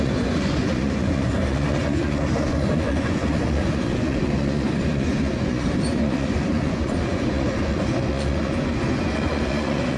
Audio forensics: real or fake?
fake